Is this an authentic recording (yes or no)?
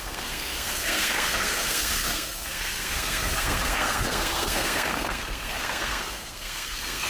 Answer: no